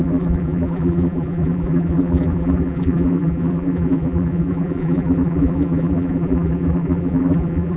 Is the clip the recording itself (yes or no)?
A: no